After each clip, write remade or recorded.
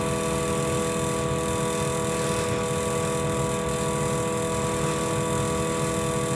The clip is recorded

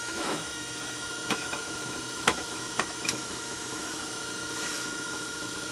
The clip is remade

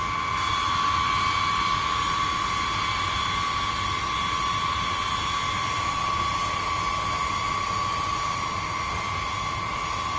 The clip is recorded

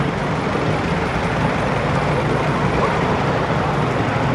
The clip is recorded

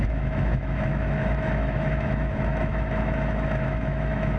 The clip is remade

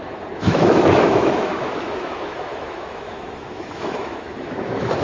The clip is remade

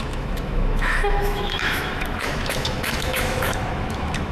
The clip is remade